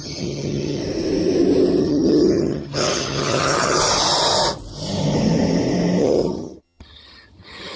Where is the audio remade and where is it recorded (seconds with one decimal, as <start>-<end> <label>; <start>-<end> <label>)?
0.0-0.8 remade; 0.8-1.8 recorded; 1.8-3.8 remade; 3.8-6.0 recorded; 6.0-7.8 remade